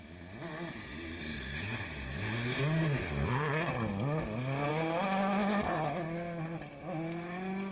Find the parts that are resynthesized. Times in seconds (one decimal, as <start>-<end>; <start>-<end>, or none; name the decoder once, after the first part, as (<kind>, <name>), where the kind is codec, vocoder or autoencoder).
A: none